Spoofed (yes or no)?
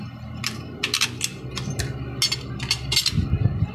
no